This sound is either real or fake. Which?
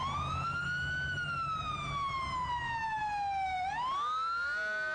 real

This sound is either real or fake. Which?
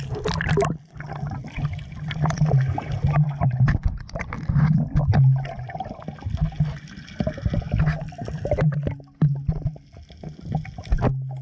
real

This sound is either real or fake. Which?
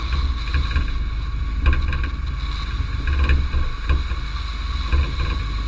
real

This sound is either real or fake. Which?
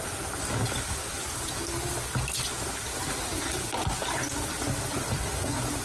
real